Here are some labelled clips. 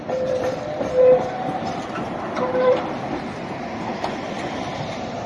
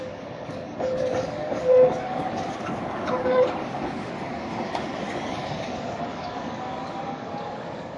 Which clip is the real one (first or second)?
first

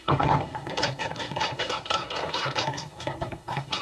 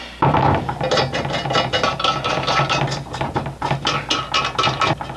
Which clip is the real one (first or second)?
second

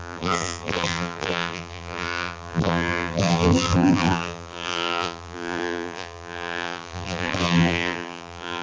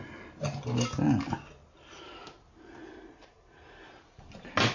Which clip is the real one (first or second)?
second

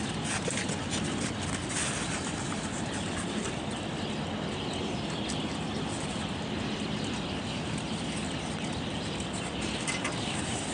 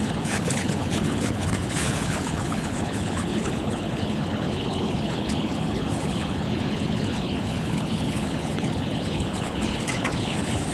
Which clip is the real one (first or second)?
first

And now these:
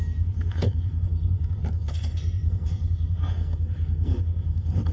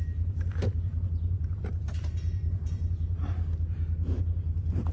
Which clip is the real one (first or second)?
second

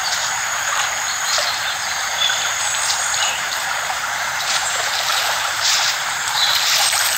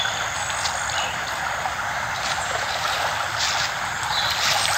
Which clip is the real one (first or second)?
second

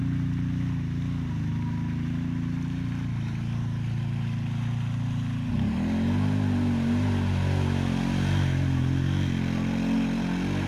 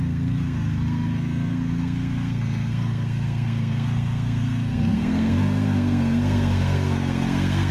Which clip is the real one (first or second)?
first